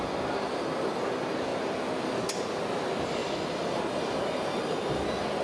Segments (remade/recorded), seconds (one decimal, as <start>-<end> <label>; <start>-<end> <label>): 0.0-5.4 recorded